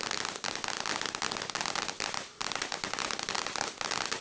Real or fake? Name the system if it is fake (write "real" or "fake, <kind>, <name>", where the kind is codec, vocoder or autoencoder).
real